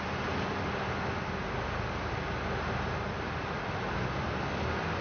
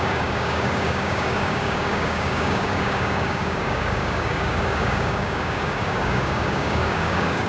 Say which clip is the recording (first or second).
first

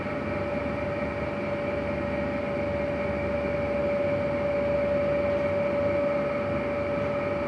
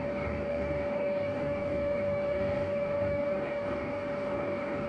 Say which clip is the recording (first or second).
first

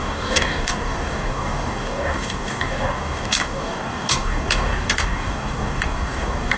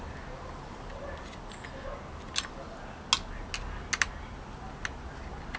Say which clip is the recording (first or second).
second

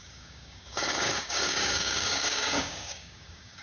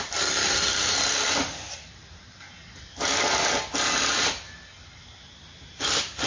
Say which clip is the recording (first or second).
second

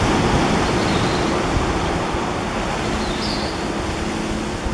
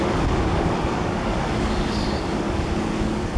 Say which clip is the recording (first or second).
first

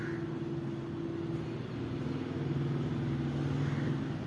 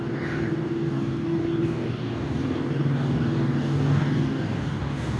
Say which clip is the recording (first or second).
first